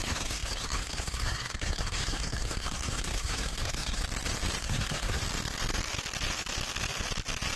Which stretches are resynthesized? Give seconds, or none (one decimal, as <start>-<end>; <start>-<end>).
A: 0.0-4.0; 4.6-5.2